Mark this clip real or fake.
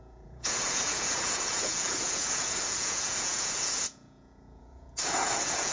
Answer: fake